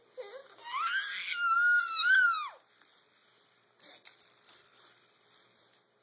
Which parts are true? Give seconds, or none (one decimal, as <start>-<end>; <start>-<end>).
0.0-6.0